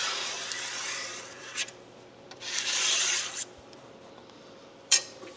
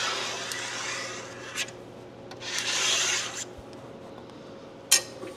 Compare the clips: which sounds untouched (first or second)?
second